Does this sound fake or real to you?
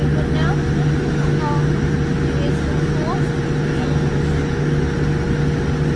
real